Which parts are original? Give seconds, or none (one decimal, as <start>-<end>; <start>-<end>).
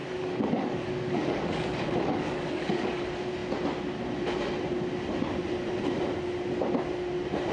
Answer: 3.0-7.5